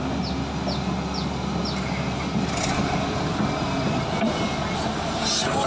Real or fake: real